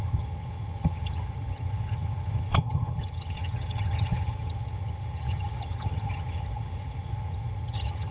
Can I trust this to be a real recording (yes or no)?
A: no